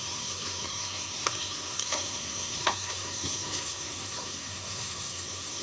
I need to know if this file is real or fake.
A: fake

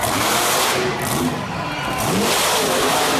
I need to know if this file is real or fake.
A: real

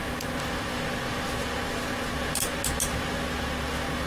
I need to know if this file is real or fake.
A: real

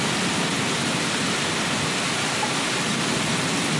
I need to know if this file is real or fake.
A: real